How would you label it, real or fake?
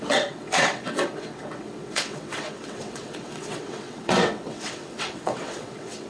fake